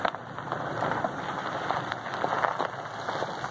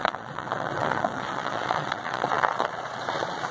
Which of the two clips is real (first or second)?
first